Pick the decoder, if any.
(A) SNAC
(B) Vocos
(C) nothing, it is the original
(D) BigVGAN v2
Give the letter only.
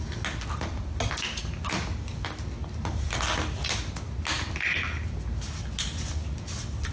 C